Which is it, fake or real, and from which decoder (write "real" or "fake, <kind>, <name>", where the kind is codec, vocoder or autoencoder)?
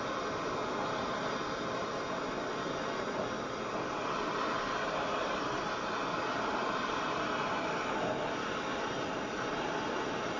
real